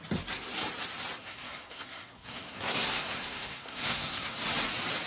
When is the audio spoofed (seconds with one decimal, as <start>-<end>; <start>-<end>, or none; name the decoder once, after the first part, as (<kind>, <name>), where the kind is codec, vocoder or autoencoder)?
1.2-4.3 (codec, SNAC)